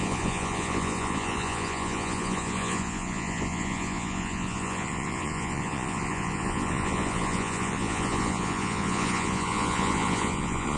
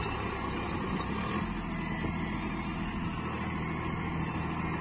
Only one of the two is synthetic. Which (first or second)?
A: first